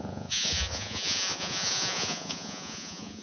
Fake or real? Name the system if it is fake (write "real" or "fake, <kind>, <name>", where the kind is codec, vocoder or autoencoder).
fake, vocoder, Vocos